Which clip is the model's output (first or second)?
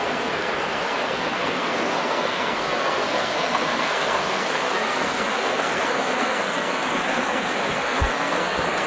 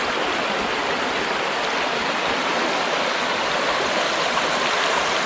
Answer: first